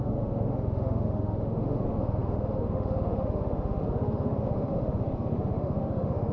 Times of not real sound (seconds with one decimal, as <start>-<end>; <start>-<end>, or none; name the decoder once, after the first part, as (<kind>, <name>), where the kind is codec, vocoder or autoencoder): 0.0-6.3 (autoencoder, DAC-VAE)